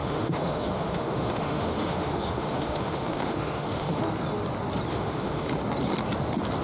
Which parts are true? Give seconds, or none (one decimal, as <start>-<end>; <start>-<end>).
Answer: 4.0-4.9; 5.5-6.6